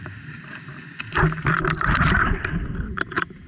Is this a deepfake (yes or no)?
yes